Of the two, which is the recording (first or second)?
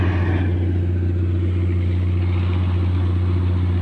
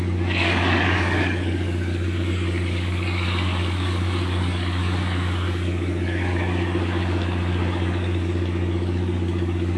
first